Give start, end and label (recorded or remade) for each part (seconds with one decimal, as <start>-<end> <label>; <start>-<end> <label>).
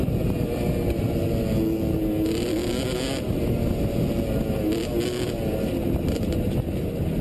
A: 0.0-7.2 recorded